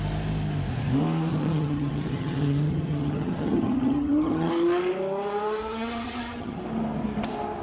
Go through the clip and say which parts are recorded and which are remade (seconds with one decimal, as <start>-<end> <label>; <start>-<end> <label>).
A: 0.0-1.3 recorded; 1.3-4.5 remade; 4.5-5.6 recorded; 5.6-6.6 remade; 6.6-7.6 recorded